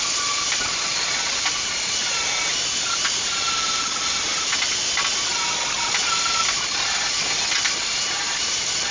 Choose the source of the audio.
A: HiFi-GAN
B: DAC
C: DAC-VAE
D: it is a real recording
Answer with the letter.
D